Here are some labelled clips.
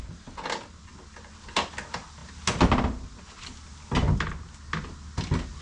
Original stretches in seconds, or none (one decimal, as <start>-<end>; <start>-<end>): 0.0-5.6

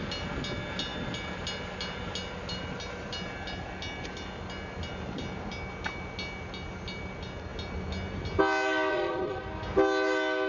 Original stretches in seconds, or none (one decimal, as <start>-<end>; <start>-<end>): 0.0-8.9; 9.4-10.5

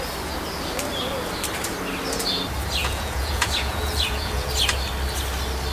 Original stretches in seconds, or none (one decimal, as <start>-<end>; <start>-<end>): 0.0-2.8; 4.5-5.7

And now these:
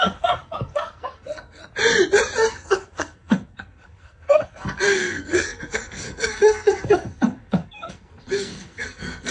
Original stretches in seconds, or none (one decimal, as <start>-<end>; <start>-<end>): 1.6-2.5

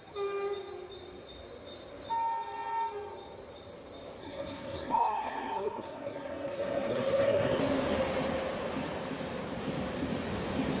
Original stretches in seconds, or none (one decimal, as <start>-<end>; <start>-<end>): 0.0-4.2; 7.6-10.8

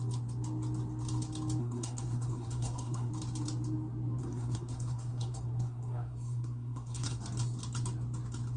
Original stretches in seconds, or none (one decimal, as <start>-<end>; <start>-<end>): 0.0-1.6; 3.1-4.2; 7.2-8.6

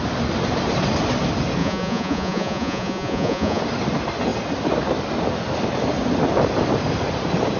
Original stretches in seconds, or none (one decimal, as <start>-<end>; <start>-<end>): 0.0-1.6; 3.6-7.6

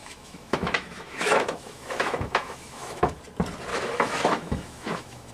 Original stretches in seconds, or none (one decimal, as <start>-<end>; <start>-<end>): 3.2-3.7